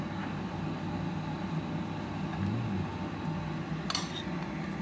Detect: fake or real real